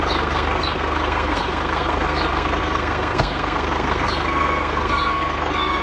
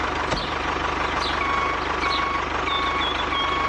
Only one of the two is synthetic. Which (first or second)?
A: first